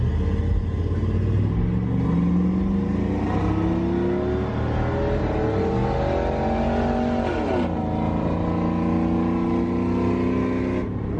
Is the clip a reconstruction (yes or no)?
no